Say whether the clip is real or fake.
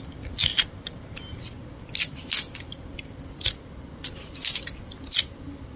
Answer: real